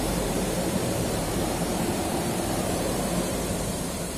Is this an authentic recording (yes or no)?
no